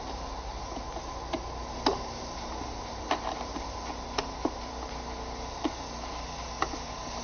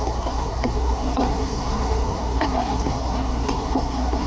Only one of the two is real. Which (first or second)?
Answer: first